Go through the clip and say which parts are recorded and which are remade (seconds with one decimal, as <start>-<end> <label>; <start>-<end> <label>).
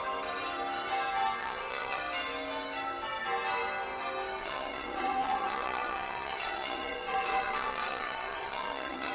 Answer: 0.0-1.4 recorded; 1.4-2.0 remade; 2.0-4.4 recorded; 4.4-9.1 remade